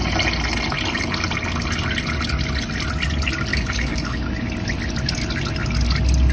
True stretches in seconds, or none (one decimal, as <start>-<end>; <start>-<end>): 0.0-3.5; 4.2-6.3